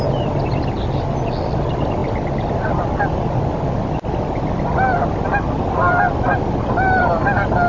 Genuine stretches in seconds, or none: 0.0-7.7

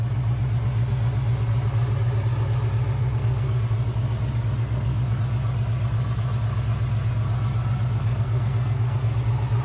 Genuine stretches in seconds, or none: 0.0-3.0; 3.6-4.6; 5.2-8.0; 9.1-9.6

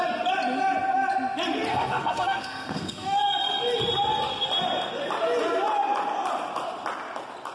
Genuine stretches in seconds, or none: 0.0-1.7; 3.2-7.5

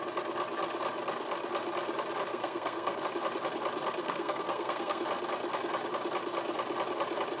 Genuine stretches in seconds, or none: 0.0-2.3; 3.0-4.0; 5.0-7.4

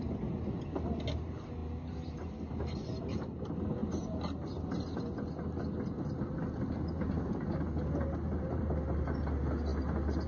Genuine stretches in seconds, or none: 0.0-10.3

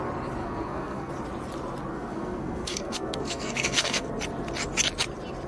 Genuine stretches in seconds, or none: 0.0-0.4; 1.1-1.9; 4.1-5.5